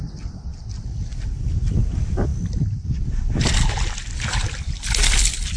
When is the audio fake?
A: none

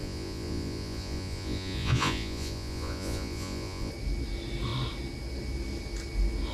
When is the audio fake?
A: 0.0-3.9 (vocoder, Vocos)

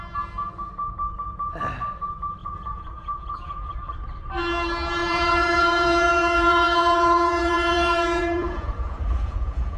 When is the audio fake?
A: 2.4-3.7 (vocoder, Vocos); 5.0-9.8

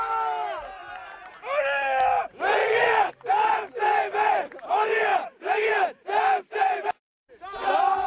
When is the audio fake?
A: 2.6-3.1 (vocoder, Vocos)